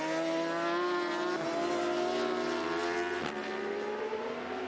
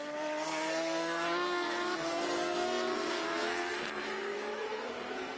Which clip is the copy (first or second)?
second